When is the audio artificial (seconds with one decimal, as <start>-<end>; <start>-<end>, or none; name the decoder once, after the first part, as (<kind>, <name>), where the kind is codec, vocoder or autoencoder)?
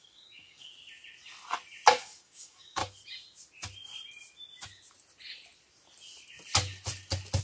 0.0-0.7 (codec, DAC); 2.0-2.8